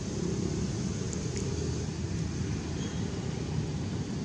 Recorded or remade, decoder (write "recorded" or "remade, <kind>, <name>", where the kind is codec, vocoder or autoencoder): recorded